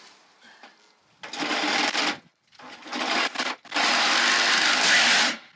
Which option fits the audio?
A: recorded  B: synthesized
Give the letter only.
A